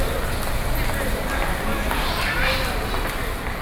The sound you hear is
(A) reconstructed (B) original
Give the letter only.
B